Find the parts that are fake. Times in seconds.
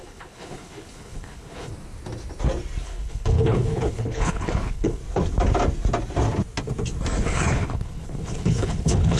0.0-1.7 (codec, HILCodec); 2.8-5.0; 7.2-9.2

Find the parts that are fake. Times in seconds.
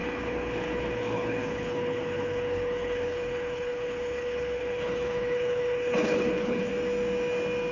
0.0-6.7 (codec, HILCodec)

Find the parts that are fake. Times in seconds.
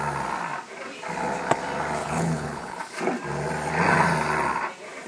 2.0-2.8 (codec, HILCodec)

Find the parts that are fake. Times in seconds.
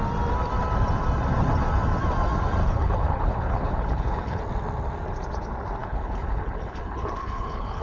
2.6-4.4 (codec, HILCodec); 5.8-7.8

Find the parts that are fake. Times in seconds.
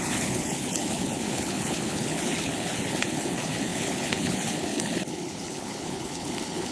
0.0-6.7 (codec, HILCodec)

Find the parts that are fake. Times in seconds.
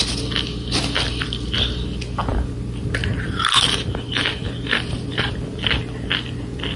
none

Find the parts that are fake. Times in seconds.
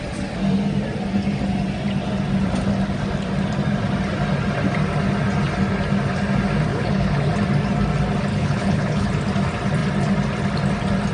6.7-7.3 (codec, HILCodec); 8.3-9.1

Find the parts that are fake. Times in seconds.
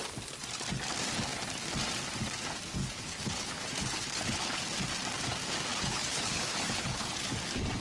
2.8-4.6 (codec, HILCodec); 5.7-7.2